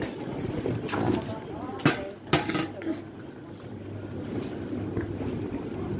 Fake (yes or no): no